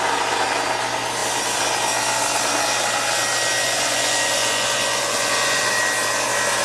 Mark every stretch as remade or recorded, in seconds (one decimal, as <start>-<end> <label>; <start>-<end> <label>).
0.0-3.6 recorded; 3.6-5.7 remade; 5.7-6.6 recorded